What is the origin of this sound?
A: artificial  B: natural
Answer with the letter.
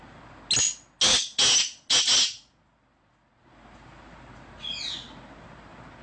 B